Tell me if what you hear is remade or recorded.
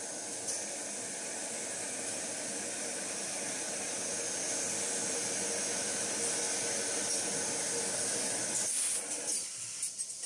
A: recorded